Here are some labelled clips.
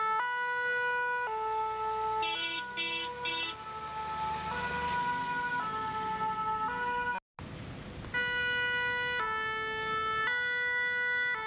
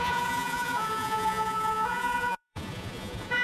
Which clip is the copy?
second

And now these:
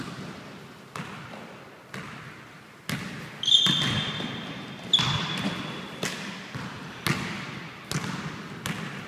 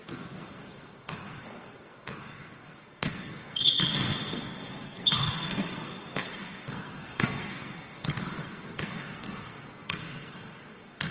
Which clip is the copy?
second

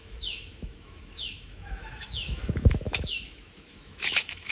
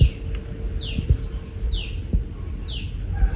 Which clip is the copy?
first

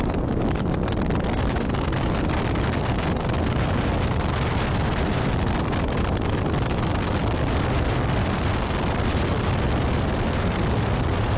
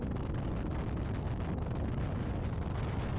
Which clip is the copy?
first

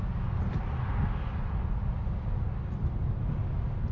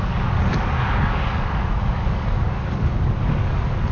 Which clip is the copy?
second